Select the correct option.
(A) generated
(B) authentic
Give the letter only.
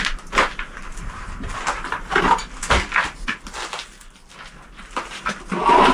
B